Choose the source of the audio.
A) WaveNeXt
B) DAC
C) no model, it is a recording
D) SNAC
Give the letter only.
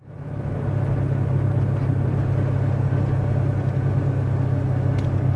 C